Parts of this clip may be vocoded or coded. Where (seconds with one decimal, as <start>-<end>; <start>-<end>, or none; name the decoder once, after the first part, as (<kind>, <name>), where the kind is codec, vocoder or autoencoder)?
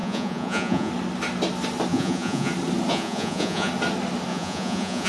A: 0.0-0.9 (vocoder, Vocos); 1.9-2.5; 2.9-3.7; 4.3-5.1